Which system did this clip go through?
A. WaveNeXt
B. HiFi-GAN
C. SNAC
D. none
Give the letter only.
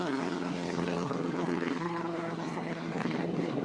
C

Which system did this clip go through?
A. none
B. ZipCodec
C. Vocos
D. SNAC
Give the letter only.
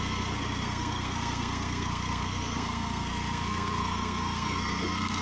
D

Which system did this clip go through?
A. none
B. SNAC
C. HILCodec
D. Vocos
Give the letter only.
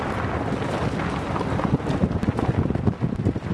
A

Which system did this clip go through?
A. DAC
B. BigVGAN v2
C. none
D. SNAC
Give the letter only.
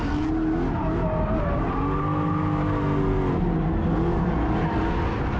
C